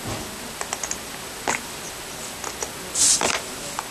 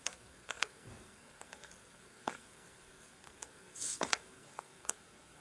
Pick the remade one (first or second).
second